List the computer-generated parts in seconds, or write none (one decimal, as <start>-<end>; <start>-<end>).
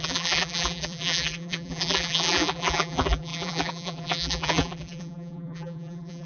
0.0-6.3